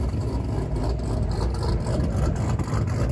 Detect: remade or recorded recorded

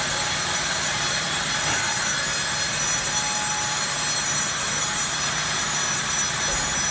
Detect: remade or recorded recorded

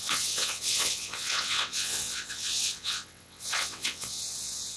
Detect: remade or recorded remade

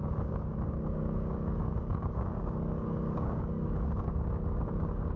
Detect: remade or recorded remade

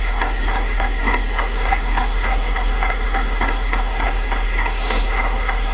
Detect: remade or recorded remade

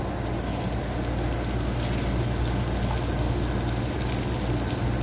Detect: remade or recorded recorded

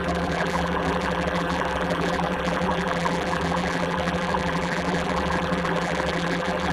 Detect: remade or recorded remade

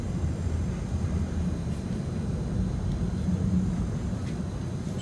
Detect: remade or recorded remade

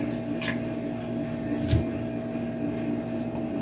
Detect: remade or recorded recorded